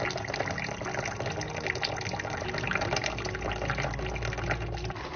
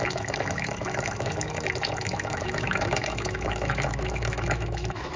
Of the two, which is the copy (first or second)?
second